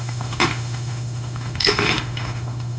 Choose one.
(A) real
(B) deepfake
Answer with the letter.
B